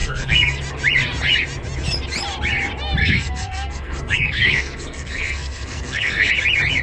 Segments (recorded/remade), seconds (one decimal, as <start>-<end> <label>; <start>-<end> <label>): 0.0-0.6 remade; 0.6-3.0 recorded; 3.0-6.3 remade; 6.3-6.8 recorded